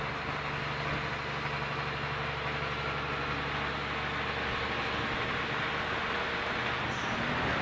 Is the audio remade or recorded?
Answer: recorded